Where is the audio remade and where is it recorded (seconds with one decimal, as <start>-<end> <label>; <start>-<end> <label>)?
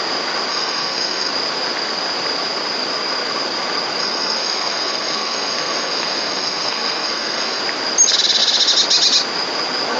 0.0-0.5 recorded; 0.5-1.3 remade; 1.3-4.0 recorded; 4.0-7.6 remade; 7.6-10.0 recorded